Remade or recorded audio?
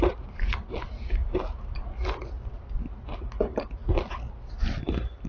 recorded